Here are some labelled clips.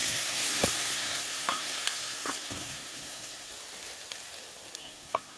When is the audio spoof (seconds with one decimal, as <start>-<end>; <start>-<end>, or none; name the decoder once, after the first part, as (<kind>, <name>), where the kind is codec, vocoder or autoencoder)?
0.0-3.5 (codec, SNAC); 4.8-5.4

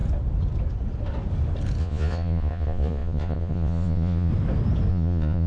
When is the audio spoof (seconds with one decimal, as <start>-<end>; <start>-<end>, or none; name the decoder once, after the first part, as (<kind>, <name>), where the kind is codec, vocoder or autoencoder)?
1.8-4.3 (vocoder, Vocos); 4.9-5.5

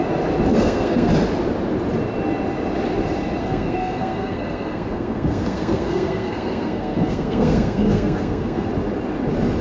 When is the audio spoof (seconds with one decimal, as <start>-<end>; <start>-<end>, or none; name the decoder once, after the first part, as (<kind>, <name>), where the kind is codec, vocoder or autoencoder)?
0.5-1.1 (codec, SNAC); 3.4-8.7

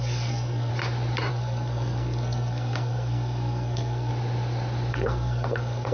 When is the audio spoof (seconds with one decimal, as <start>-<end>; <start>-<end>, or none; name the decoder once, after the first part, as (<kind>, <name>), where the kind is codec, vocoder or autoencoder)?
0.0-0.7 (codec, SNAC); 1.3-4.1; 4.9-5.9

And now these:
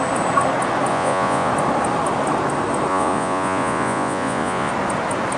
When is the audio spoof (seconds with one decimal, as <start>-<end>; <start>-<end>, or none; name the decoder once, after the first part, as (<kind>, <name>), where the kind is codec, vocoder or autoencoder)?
0.9-1.5 (vocoder, Vocos); 2.9-4.7

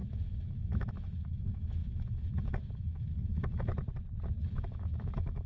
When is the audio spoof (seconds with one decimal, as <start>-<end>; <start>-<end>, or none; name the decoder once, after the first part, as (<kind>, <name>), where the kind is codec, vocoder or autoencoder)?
0.0-3.7 (autoencoder, DAC-VAE); 4.4-5.5